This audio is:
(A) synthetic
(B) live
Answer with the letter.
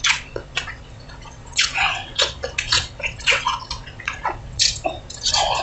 A